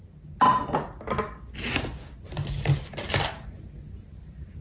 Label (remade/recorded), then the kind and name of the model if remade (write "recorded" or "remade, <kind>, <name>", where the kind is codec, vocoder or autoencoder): recorded